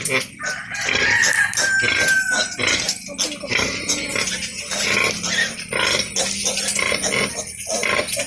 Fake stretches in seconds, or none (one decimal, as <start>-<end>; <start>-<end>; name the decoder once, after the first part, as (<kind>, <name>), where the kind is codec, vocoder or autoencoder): none